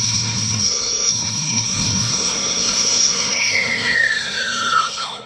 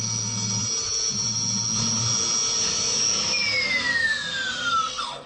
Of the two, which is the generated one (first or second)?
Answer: first